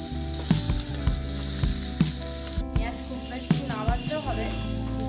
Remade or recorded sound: recorded